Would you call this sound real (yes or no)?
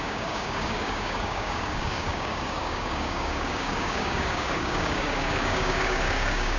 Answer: no